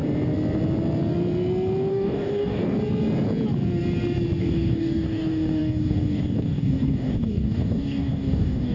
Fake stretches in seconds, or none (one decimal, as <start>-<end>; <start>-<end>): 1.9-2.6; 4.4-8.7